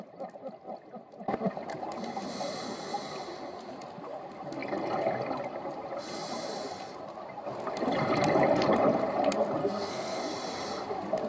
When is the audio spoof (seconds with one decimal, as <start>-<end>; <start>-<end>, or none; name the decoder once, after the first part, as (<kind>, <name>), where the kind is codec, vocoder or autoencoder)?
9.6-10.2 (codec, SNAC)